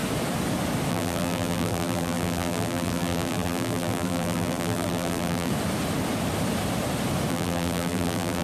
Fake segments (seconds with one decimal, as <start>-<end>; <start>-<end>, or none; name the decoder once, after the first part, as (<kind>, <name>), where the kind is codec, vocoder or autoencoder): 0.9-5.5 (vocoder, BigVGAN v2); 7.3-8.4